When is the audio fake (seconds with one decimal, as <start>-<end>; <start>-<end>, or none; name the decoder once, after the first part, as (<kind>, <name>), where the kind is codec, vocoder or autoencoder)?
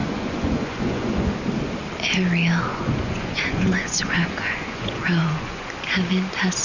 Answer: 0.0-1.3 (vocoder, Vocos); 2.7-5.7